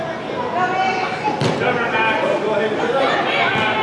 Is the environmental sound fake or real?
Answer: real